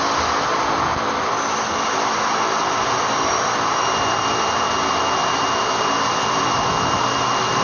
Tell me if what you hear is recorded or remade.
recorded